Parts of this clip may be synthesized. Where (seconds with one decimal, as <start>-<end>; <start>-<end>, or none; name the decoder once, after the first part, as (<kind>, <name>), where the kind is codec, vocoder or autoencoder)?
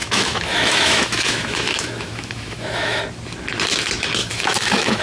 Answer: 0.0-3.0 (autoencoder, DAC-VAE); 4.2-5.0